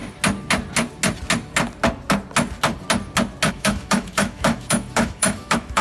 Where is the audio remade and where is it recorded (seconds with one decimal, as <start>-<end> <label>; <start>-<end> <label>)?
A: 0.0-3.5 recorded; 3.5-5.8 remade